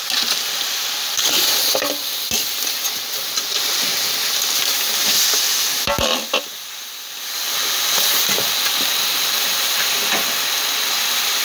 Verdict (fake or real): real